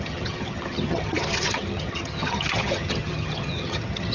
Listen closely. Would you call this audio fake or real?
fake